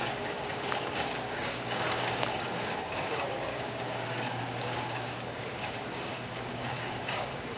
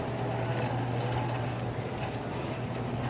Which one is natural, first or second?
second